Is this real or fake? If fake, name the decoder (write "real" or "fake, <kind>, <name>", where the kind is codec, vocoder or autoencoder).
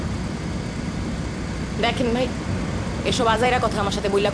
fake, vocoder, BigVGAN v2